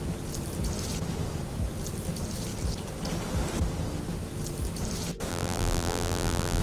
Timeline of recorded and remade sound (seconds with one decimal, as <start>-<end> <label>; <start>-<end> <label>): 0.0-5.3 recorded; 5.3-6.6 remade